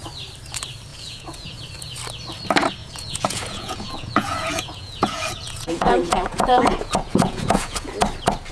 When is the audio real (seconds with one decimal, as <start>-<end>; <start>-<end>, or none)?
0.0-0.9; 1.6-2.8; 7.9-8.5